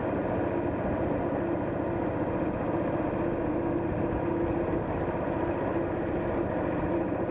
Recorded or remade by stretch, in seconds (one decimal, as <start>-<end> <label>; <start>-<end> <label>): 0.0-7.3 recorded